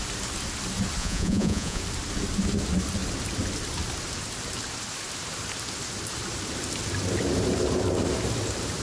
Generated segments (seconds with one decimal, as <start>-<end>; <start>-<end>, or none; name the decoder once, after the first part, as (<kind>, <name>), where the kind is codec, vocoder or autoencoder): 1.0-1.8 (vocoder, Vocos)